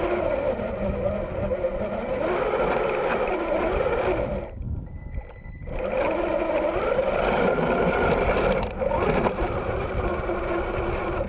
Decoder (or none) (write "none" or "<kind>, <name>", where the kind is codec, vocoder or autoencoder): none